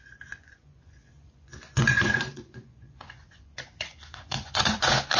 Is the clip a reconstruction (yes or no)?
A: yes